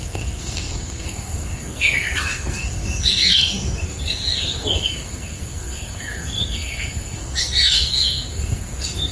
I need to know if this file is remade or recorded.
remade